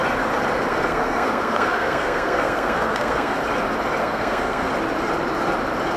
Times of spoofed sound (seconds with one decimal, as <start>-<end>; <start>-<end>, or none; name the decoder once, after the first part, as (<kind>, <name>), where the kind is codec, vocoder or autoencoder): 0.7-3.4 (codec, SNAC); 4.0-4.7